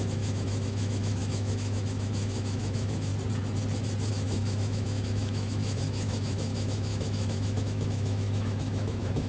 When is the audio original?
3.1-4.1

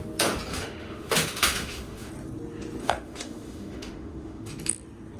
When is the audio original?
0.0-0.5; 2.1-2.8; 4.5-5.2

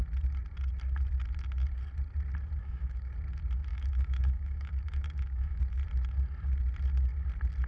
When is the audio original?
0.0-2.6; 3.1-3.7; 5.6-7.7

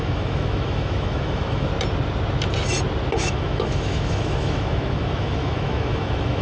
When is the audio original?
1.7-3.2

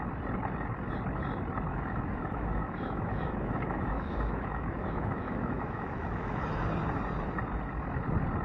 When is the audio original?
0.0-1.7; 6.4-8.4

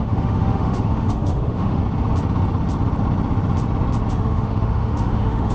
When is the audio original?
1.8-4.1